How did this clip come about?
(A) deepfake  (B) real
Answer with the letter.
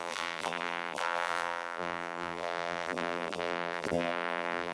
A